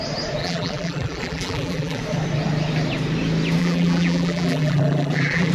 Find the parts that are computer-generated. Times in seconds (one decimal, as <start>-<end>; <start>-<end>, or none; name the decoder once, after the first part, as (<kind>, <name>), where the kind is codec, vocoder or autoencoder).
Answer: 0.4-2.0 (vocoder, BigVGAN v2); 3.6-5.5

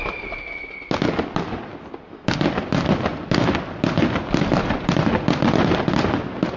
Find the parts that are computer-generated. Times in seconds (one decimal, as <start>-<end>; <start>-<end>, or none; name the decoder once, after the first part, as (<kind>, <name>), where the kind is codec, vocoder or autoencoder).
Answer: 4.0-5.7 (vocoder, BigVGAN v2)